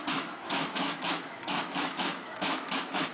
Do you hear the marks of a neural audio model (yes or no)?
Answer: yes